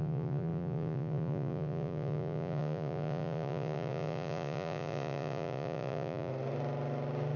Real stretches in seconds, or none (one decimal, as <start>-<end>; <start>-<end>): 6.3-7.4